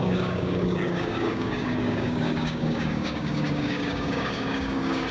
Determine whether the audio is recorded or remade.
remade